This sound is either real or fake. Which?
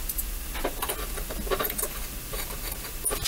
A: real